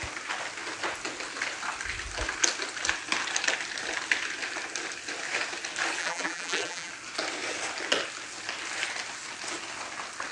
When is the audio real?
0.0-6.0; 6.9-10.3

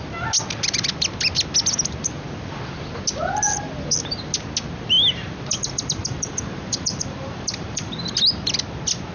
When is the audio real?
0.0-6.0; 7.9-9.1

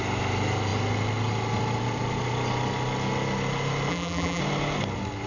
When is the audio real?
0.0-3.9; 4.4-5.3

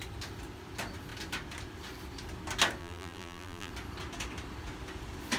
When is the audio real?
0.0-2.8; 3.7-5.4